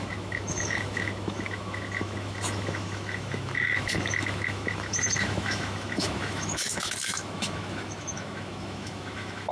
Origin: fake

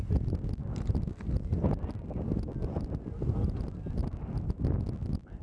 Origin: real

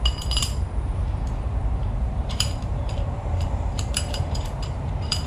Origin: fake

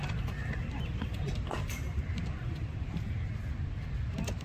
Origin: fake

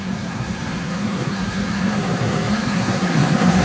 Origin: fake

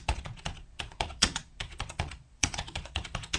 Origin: fake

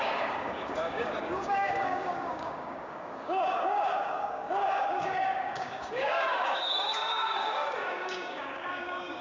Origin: fake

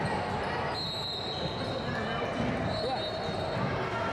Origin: real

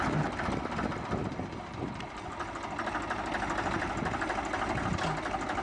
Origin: real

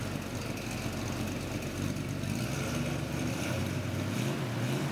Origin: real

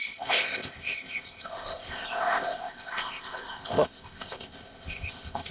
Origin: fake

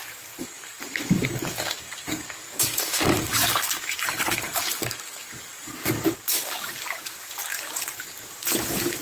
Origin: fake